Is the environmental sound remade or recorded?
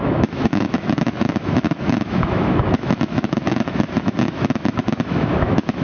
remade